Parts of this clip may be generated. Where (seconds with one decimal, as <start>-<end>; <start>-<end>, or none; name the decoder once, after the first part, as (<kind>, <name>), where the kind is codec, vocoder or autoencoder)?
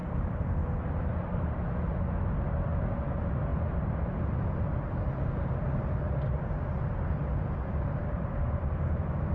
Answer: none